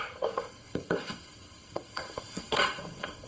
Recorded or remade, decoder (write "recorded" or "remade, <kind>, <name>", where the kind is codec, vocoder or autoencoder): remade, codec, SNAC